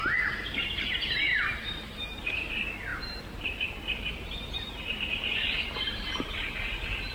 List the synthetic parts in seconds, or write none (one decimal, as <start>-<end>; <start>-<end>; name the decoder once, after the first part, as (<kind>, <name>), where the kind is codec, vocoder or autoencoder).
1.3-2.5 (vocoder, BigVGAN v2); 2.9-6.5